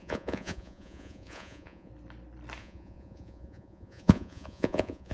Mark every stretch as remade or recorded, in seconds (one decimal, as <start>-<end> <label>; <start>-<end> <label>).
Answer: 0.0-1.9 remade; 1.9-2.6 recorded; 2.6-5.1 remade